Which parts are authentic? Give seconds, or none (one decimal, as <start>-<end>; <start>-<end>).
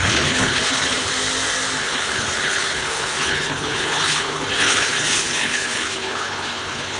1.1-1.8